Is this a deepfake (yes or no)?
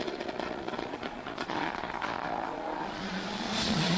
yes